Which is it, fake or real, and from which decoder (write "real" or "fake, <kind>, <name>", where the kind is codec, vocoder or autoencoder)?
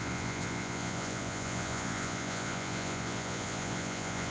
fake, vocoder, Vocos